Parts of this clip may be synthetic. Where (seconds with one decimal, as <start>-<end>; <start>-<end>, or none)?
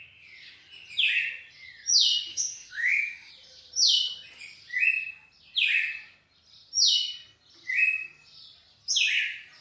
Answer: 2.3-3.3